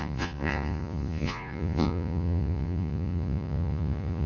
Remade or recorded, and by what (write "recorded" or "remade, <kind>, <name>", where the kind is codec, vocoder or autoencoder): remade, vocoder, Vocos